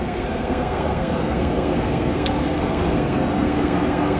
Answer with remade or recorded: remade